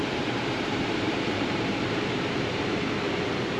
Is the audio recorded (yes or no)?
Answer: no